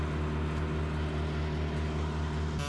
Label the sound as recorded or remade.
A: recorded